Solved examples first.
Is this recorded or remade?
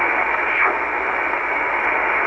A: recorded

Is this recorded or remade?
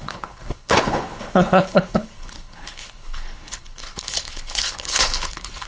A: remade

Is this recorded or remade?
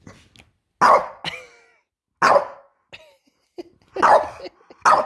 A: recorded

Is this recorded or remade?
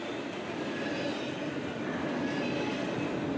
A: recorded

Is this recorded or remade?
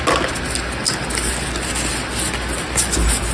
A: recorded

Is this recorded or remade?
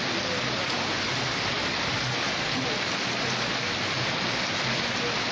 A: recorded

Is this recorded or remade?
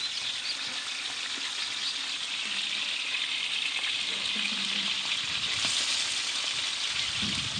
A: recorded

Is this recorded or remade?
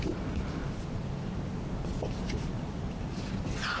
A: recorded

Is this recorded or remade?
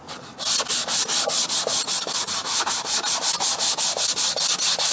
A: recorded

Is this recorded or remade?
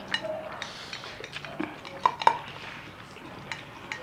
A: recorded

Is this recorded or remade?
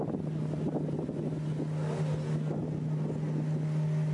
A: recorded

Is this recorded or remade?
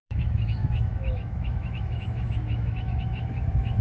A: remade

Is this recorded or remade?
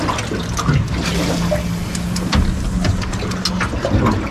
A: recorded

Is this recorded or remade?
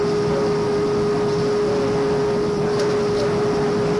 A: recorded